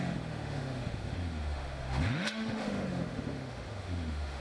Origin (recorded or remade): remade